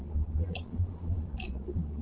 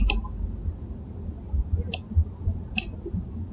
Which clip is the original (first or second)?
second